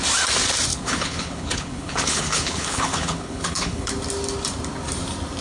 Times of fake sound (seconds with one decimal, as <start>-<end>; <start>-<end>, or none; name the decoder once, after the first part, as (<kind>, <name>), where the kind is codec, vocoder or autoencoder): 0.7-3.9 (codec, HILCodec)